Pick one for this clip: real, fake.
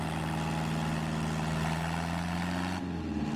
real